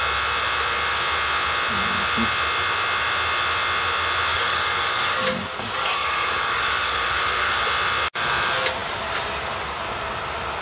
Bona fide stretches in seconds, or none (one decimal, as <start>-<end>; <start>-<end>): 0.0-4.3; 7.6-10.6